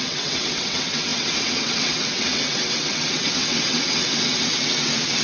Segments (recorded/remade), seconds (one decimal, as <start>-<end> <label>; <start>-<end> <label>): 0.0-5.2 remade

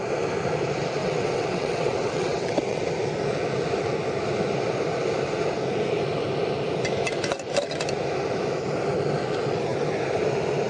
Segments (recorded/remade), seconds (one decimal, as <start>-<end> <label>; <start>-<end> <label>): 0.0-1.0 recorded; 1.0-2.8 remade; 2.8-10.7 recorded

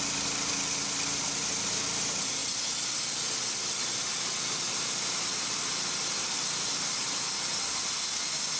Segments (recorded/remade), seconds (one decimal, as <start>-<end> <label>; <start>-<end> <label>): 0.0-8.6 recorded